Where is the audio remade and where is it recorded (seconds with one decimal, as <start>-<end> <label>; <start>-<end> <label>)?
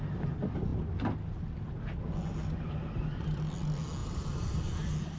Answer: 0.0-4.0 recorded; 4.0-4.7 remade; 4.7-5.2 recorded